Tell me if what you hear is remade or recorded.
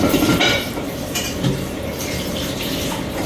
remade